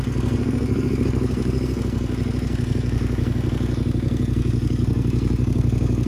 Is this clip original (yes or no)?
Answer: no